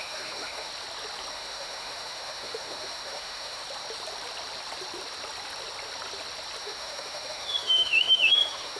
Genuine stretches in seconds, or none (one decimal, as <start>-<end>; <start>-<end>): 0.7-1.3; 3.6-6.6